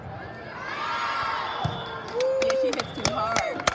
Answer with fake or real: real